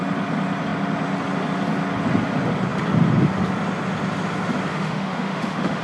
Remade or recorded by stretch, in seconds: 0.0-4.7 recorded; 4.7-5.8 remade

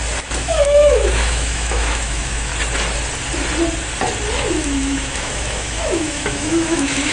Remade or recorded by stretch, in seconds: 0.0-0.5 recorded; 0.5-2.5 remade; 2.5-4.5 recorded; 4.5-7.1 remade

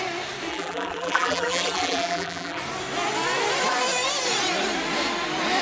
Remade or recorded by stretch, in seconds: 0.0-0.5 recorded; 0.5-2.6 remade; 2.6-5.6 recorded

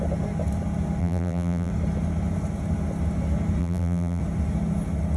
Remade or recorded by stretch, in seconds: 0.0-1.0 recorded; 1.0-1.7 remade; 1.7-3.6 recorded; 3.6-4.2 remade; 4.2-5.2 recorded

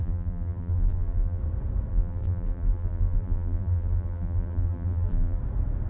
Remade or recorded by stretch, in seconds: 0.0-1.4 remade; 1.4-1.9 recorded; 1.9-5.4 remade; 5.4-5.9 recorded

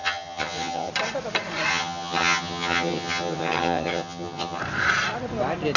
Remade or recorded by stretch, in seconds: 0.0-0.9 remade; 0.9-1.7 recorded; 1.7-4.6 remade; 4.6-5.8 recorded

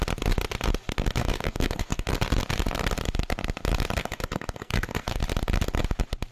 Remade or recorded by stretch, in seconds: 0.0-1.2 recorded; 1.2-2.1 remade; 2.1-4.0 recorded; 4.0-5.2 remade; 5.2-6.3 recorded

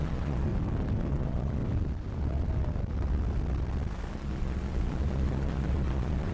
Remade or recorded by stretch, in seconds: 0.0-0.5 remade; 0.5-1.1 recorded; 1.1-1.6 remade; 1.6-4.1 recorded; 4.1-6.3 remade